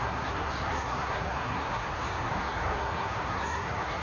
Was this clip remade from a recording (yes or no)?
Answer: yes